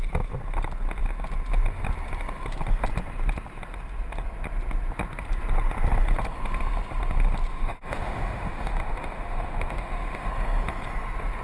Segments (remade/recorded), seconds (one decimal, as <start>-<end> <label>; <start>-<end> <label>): 0.0-7.5 recorded; 7.5-10.3 remade; 10.3-11.4 recorded